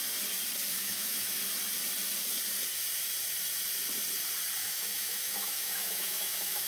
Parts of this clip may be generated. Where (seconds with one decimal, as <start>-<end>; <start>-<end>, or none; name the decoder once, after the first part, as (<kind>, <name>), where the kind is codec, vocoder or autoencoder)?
0.7-1.4 (autoencoder, DAC-VAE); 4.6-6.7